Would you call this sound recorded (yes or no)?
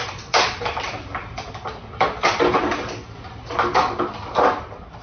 yes